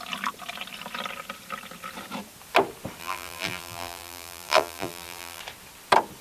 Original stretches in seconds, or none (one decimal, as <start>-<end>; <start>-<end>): 0.0-3.0; 5.4-6.2